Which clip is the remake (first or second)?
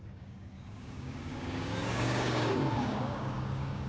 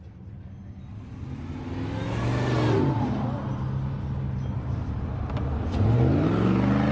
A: first